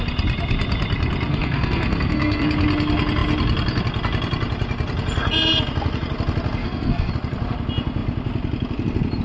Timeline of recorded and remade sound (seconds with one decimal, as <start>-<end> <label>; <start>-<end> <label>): 0.0-1.3 recorded; 1.3-2.5 remade; 2.5-6.6 recorded; 6.6-7.1 remade; 7.1-9.2 recorded